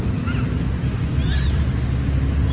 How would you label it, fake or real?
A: real